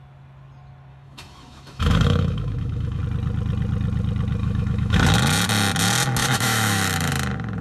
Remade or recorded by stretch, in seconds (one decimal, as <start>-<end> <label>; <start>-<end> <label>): 0.0-0.9 recorded; 0.9-3.0 remade; 3.0-4.4 recorded; 4.4-5.0 remade; 5.0-6.2 recorded; 6.2-7.1 remade; 7.1-7.6 recorded